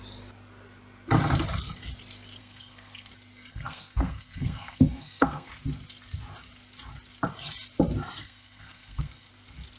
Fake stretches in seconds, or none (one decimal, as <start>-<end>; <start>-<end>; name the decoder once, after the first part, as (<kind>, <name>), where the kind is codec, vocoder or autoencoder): 2.4-3.1 (codec, SNAC); 3.5-5.5; 8.2-9.3